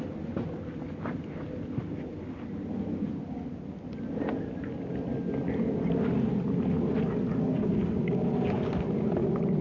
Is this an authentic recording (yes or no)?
yes